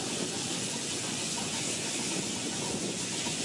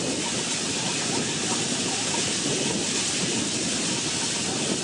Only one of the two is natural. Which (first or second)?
second